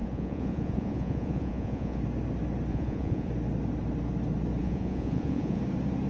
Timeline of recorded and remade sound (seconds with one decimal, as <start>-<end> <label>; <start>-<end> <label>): 0.0-2.0 remade; 2.0-2.7 recorded; 2.7-3.3 remade; 3.3-4.6 recorded; 4.6-5.6 remade; 5.6-6.1 recorded